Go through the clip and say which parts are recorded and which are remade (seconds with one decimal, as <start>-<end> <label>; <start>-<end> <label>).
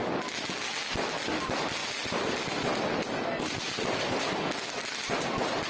0.0-5.7 recorded